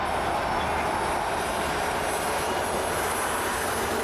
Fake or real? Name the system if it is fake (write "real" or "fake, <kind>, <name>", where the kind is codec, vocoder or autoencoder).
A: real